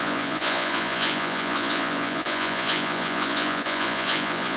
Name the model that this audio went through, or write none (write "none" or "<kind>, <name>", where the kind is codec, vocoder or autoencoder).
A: vocoder, Vocos